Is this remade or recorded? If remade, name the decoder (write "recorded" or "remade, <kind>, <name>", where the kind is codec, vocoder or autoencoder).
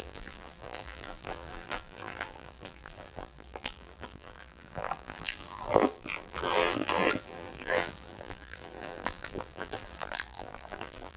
remade, vocoder, BigVGAN v2